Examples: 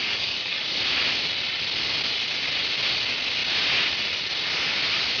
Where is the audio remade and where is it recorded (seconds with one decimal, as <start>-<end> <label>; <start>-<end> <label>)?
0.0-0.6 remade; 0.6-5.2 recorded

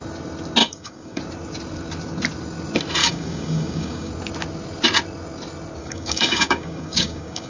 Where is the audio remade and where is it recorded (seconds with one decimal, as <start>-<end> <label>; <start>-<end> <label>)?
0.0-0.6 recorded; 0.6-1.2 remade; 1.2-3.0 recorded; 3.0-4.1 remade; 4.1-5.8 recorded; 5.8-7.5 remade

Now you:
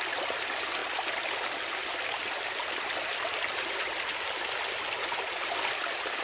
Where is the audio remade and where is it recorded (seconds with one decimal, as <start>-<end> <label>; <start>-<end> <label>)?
0.0-6.2 recorded

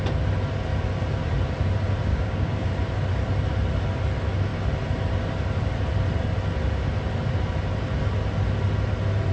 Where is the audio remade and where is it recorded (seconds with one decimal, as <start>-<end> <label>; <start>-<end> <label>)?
0.0-2.1 recorded; 2.1-2.7 remade; 2.7-9.3 recorded

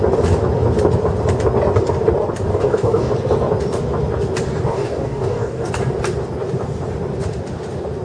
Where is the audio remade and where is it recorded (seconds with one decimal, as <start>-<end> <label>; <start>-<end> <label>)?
0.0-2.5 recorded; 2.5-3.1 remade; 3.1-4.7 recorded; 4.7-5.7 remade; 5.7-8.0 recorded

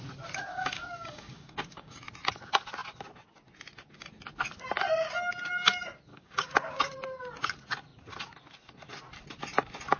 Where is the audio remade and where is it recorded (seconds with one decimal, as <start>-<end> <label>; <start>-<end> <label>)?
0.0-0.5 recorded; 0.5-2.0 remade; 2.0-6.1 recorded; 6.1-6.8 remade; 6.8-10.0 recorded

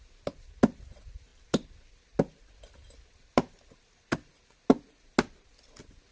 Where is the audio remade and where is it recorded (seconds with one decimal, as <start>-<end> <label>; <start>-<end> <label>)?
0.0-6.1 recorded

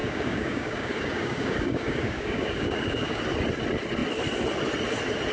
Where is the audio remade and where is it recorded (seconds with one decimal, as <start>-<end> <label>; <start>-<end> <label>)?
0.0-3.2 remade; 3.2-5.3 recorded